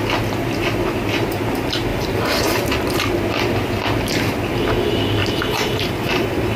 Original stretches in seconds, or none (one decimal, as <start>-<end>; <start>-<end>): 0.0-1.9; 2.4-5.2; 5.9-6.6